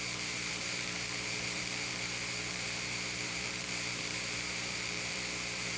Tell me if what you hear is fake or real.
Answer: fake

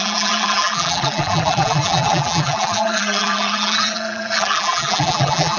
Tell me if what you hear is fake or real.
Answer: fake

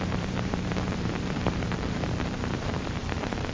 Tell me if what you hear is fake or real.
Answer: fake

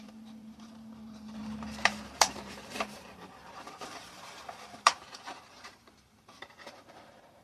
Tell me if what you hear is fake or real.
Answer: fake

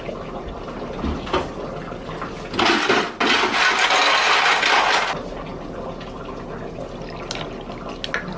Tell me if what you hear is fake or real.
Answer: real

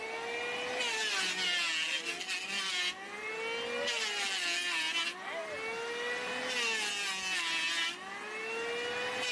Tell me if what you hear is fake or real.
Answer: real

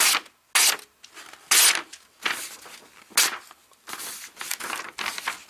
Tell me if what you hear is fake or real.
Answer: real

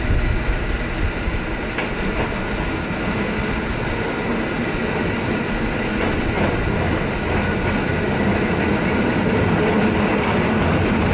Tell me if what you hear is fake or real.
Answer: real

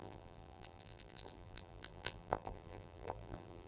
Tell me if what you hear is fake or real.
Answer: fake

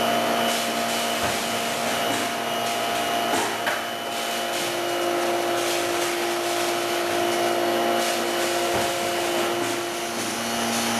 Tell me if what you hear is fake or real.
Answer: real